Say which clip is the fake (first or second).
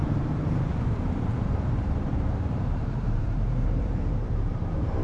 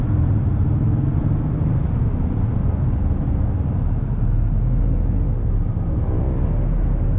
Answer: first